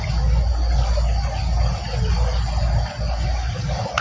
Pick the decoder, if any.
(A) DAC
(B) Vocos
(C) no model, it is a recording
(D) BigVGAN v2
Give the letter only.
C